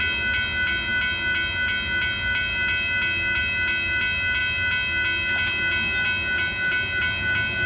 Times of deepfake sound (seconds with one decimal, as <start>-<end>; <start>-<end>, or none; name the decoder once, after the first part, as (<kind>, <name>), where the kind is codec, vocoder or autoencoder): none